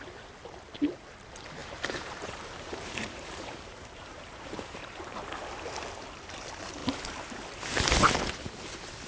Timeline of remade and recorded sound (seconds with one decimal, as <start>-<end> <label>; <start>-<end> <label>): 0.0-1.6 recorded; 1.6-5.7 remade; 5.7-9.1 recorded